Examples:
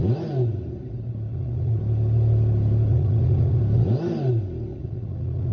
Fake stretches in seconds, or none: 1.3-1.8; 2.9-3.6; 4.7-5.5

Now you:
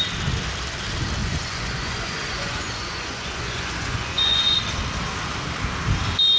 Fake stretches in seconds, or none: 1.2-4.6

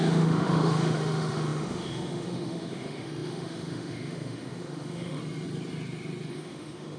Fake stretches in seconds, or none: 0.0-5.2; 6.3-7.0

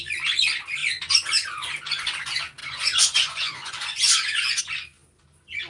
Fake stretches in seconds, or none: 0.8-1.7; 2.6-4.6

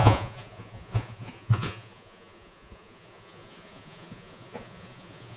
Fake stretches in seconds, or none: 0.0-5.4

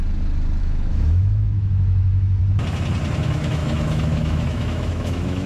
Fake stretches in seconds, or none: 0.6-2.4; 3.2-5.5